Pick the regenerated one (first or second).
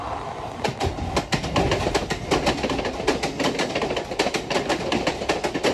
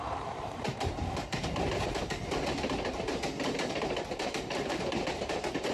second